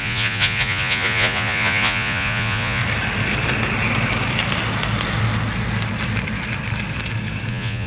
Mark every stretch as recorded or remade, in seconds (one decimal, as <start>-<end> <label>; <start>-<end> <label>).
0.0-2.8 remade; 2.8-7.5 recorded; 7.5-7.9 remade